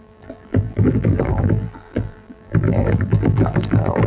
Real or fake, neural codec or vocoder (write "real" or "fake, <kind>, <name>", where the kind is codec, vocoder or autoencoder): fake, vocoder, BigVGAN v2